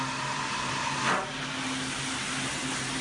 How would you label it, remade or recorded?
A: recorded